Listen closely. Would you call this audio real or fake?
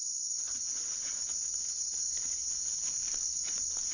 fake